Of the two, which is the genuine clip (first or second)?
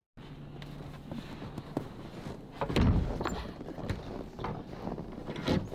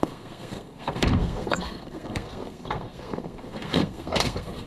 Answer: first